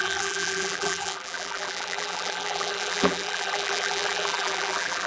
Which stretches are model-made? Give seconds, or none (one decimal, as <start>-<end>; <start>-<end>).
0.0-5.1